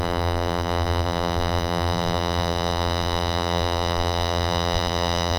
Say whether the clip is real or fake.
fake